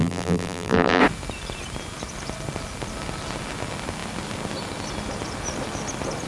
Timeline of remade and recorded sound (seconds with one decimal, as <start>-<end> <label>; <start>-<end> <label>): 0.0-1.0 remade; 1.0-6.3 recorded